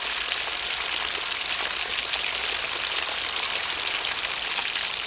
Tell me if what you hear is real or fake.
real